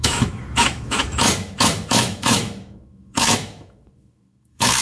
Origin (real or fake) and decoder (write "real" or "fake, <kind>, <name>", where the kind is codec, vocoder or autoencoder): fake, autoencoder, DAC-VAE